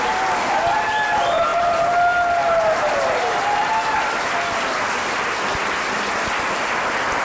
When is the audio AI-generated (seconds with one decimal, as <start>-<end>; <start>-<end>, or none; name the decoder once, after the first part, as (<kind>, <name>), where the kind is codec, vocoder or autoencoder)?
none